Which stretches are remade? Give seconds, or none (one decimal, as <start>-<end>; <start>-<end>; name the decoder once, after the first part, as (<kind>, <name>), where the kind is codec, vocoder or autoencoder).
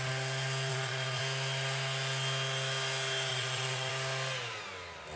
0.7-1.2 (vocoder, Vocos); 3.3-3.9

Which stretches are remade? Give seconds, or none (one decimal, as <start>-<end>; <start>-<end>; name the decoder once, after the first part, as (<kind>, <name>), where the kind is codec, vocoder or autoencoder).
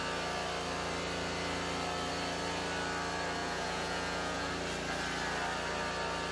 3.4-4.5 (vocoder, Vocos)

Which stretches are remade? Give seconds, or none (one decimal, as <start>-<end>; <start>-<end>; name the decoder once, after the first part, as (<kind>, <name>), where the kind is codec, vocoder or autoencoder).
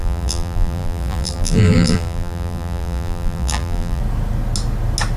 0.0-4.0 (vocoder, BigVGAN v2)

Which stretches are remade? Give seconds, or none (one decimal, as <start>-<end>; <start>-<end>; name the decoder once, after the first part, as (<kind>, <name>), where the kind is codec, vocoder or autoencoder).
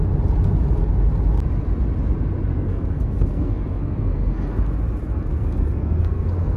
2.5-4.6 (codec, SNAC); 5.3-6.6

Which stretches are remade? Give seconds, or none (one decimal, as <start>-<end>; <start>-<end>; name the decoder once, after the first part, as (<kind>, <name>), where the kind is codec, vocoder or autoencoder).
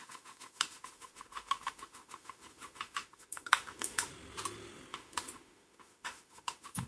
0.0-4.1 (autoencoder, DAC-VAE); 4.9-6.9